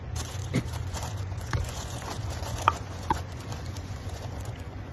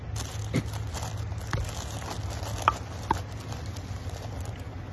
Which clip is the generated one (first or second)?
first